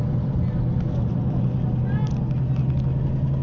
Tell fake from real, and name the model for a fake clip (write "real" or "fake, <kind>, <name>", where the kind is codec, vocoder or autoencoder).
real